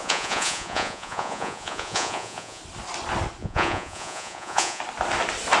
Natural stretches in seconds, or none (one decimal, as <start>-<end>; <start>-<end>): 2.6-3.4; 4.8-5.6